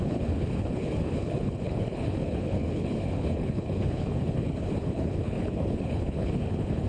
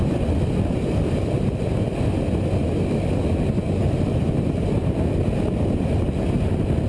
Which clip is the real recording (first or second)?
second